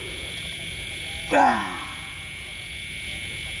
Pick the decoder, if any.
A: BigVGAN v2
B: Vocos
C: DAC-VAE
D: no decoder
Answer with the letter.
B